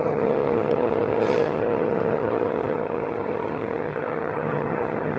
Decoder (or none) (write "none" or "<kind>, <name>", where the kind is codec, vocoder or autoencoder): vocoder, HiFi-GAN